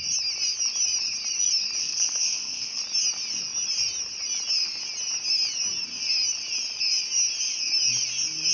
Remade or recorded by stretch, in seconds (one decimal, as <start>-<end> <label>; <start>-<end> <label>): 0.0-1.8 recorded; 1.8-2.8 remade; 2.8-8.5 recorded

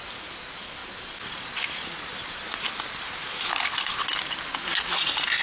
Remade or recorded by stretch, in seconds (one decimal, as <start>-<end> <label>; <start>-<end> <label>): 0.0-5.4 recorded

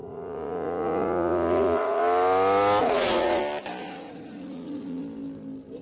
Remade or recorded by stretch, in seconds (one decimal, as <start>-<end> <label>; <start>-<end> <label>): 0.0-2.0 remade; 2.0-2.8 recorded; 2.8-3.4 remade; 3.4-3.8 recorded; 3.8-5.0 remade; 5.0-5.8 recorded